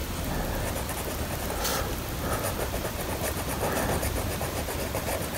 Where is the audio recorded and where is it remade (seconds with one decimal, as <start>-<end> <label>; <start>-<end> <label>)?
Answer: 0.0-1.7 recorded; 1.7-4.6 remade; 4.6-5.4 recorded